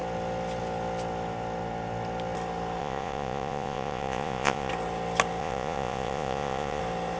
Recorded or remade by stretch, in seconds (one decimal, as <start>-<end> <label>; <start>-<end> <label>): 0.0-2.8 recorded; 2.8-4.7 remade; 4.7-5.4 recorded; 5.4-6.8 remade; 6.8-7.2 recorded